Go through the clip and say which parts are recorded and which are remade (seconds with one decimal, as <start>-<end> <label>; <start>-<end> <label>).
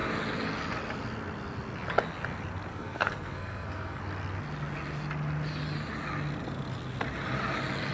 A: 0.0-2.7 recorded; 2.7-4.0 remade; 4.0-7.9 recorded